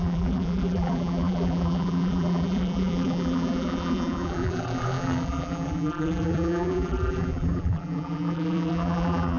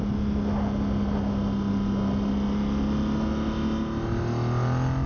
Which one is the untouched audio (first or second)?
second